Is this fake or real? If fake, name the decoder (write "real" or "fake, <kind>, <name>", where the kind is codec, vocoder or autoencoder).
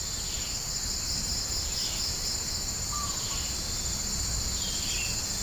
real